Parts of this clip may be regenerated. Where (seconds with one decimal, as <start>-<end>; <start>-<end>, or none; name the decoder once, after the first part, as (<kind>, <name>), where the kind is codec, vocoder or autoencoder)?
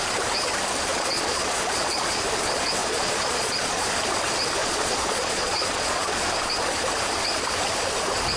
0.9-2.2 (vocoder, Vocos); 2.8-3.9; 4.6-6.3